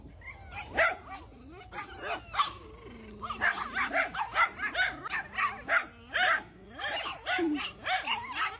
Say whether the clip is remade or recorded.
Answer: recorded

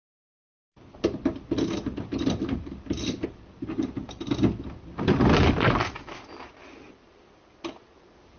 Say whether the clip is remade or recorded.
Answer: recorded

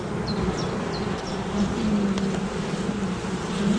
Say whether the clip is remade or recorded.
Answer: recorded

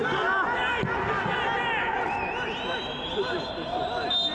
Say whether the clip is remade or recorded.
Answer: recorded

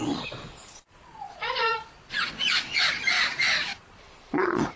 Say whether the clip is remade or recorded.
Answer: remade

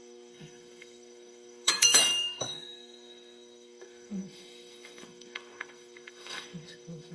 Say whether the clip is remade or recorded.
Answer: remade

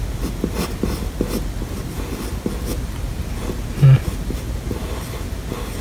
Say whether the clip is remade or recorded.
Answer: recorded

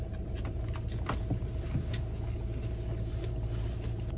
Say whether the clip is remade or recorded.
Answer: recorded